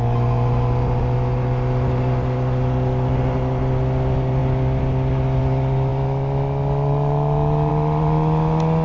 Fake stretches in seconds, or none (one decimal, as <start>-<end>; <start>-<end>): none